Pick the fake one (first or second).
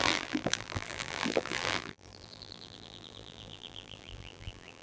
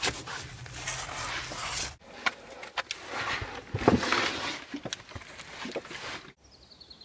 first